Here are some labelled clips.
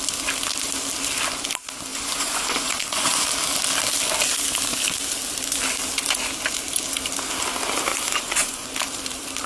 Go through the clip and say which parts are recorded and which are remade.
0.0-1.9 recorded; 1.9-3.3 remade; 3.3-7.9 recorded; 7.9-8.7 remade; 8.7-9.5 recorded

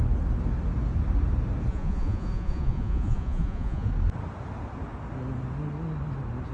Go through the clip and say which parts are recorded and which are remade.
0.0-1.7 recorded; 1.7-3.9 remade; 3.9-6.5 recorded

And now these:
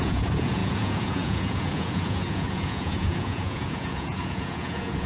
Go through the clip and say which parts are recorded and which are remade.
0.0-5.1 remade